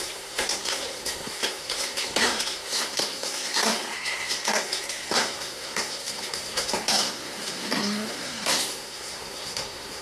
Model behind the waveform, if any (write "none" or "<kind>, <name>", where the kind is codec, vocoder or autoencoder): codec, SNAC